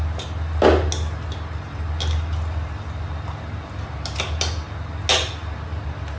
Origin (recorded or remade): recorded